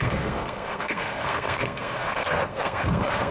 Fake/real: fake